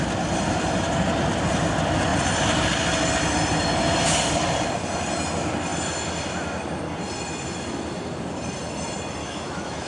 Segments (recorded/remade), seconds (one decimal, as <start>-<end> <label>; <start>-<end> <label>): 0.0-9.2 recorded; 9.2-9.9 remade